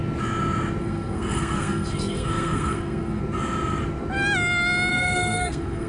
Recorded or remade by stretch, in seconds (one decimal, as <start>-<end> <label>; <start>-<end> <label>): 0.0-0.8 recorded; 0.8-3.2 remade; 3.2-4.9 recorded; 4.9-5.9 remade